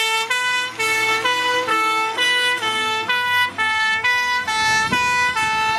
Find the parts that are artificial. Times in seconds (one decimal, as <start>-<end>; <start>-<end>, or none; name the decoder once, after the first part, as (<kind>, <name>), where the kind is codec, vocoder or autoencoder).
1.7-4.5 (codec, SNAC)